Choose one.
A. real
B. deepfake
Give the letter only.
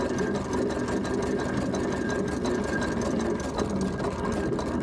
A